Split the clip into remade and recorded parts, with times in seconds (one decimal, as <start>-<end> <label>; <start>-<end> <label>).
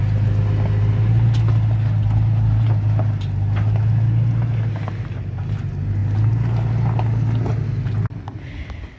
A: 0.0-9.0 recorded